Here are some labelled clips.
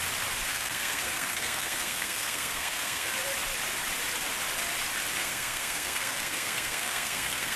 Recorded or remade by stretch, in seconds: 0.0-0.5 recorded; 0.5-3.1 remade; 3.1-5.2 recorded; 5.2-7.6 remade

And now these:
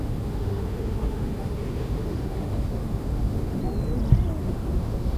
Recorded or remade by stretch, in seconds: 0.0-3.6 remade; 3.6-4.4 recorded; 4.4-5.2 remade

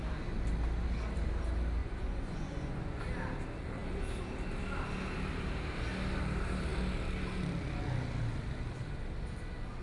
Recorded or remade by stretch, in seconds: 0.0-1.8 recorded; 1.8-3.0 remade; 3.0-9.8 recorded

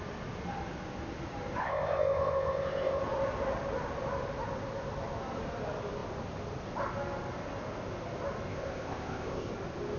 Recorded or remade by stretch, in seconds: 0.0-1.6 recorded; 1.6-3.0 remade; 3.0-8.5 recorded; 8.5-9.5 remade; 9.5-10.0 recorded